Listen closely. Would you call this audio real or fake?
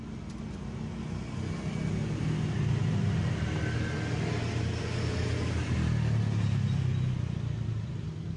real